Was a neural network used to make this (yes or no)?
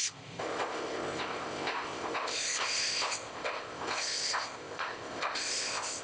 yes